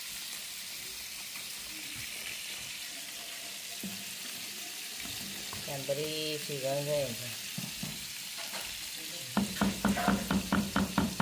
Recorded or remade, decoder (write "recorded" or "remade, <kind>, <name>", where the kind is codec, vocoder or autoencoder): remade, vocoder, BigVGAN v2